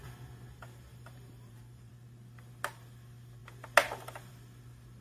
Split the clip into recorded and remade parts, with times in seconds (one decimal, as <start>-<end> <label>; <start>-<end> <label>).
0.0-0.9 recorded; 0.9-1.9 remade; 1.9-5.0 recorded